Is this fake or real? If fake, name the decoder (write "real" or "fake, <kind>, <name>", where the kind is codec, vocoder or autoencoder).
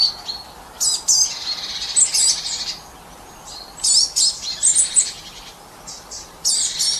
real